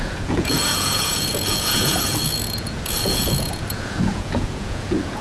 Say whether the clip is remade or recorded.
remade